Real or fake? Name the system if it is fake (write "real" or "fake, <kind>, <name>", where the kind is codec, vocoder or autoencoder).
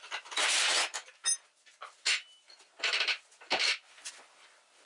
real